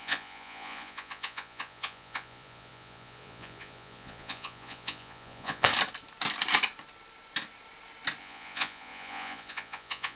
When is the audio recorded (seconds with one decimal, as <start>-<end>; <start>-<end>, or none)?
5.7-8.2